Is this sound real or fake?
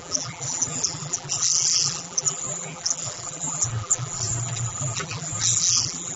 fake